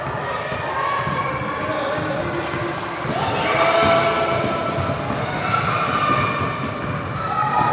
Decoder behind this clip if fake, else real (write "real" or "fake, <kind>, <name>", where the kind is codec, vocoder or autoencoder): real